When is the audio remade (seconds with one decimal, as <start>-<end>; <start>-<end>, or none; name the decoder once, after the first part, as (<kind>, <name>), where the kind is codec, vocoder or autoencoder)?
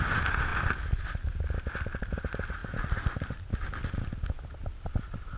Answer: 0.5-1.7 (vocoder, BigVGAN v2); 2.6-3.5